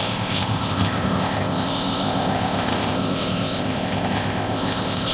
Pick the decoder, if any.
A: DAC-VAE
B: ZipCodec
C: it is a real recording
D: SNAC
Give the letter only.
B